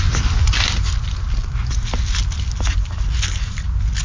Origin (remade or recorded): recorded